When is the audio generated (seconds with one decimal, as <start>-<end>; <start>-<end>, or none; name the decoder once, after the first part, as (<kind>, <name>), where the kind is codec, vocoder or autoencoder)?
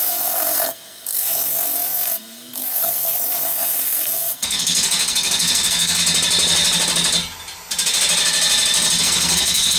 0.0-6.0 (codec, SNAC); 9.0-9.8